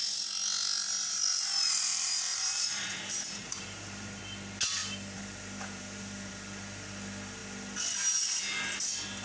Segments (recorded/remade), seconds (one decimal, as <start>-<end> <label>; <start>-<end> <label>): 0.0-1.9 recorded; 1.9-4.2 remade; 4.2-4.8 recorded; 4.8-6.3 remade; 6.3-9.2 recorded